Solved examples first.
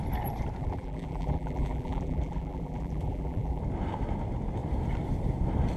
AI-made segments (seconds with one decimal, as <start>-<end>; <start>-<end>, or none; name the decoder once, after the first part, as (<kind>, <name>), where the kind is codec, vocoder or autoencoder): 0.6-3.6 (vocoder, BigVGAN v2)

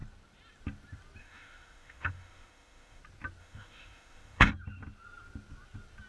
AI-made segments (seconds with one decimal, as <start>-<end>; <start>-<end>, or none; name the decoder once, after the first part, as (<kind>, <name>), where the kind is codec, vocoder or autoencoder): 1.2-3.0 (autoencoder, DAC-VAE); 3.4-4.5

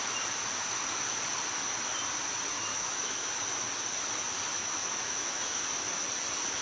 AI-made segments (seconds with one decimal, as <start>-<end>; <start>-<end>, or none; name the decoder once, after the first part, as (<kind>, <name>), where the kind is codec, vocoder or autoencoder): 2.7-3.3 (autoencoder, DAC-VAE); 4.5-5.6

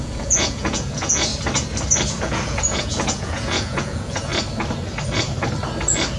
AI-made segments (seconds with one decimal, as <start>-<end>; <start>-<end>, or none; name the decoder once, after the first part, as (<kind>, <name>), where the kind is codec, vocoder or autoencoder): 0.0-1.3 (vocoder, Vocos); 2.2-4.3

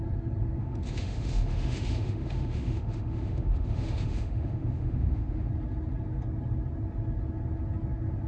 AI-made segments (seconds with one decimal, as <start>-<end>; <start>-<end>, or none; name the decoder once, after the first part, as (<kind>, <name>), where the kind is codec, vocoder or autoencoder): 0.6-5.5 (autoencoder, DAC-VAE)

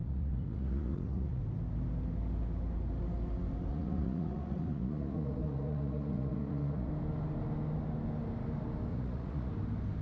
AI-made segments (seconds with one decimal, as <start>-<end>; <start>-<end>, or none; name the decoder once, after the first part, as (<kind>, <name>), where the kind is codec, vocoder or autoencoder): 0.0-1.4 (vocoder, Vocos); 3.7-6.9; 8.9-9.5